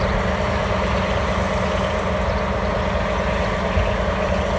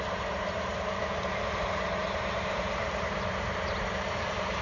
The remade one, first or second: second